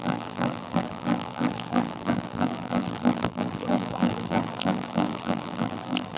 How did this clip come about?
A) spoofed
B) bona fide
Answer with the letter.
A